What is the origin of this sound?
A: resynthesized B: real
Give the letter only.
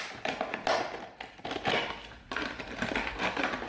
B